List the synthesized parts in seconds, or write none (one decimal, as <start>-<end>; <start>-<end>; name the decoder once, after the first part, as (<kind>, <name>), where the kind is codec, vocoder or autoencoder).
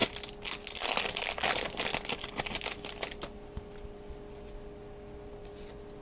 none